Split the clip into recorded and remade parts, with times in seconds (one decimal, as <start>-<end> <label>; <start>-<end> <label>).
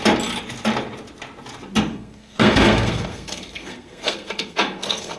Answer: 0.0-1.9 recorded; 1.9-5.2 remade